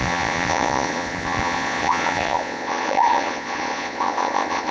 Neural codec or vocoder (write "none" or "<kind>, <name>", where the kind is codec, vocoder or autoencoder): vocoder, Vocos